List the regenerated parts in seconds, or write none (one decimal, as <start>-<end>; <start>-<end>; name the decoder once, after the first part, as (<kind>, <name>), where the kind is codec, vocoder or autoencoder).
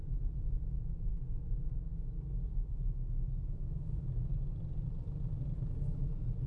0.0-0.6 (vocoder, BigVGAN v2)